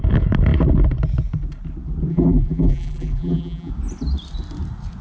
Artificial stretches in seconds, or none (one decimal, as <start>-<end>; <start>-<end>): 2.1-3.7